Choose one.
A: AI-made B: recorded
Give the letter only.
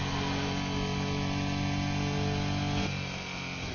B